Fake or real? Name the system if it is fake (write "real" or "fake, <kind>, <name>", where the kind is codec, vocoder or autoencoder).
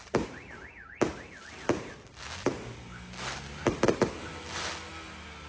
real